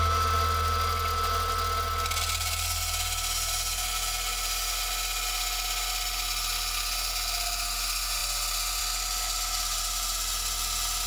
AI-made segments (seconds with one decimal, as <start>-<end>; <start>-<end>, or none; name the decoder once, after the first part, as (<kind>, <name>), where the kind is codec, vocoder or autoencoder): none